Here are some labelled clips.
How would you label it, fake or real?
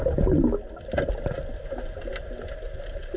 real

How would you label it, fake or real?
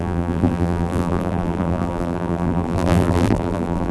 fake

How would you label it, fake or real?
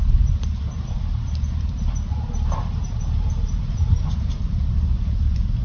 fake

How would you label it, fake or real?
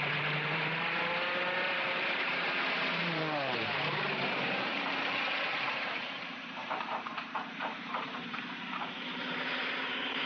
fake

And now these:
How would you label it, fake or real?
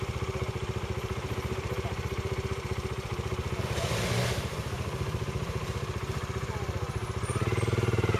fake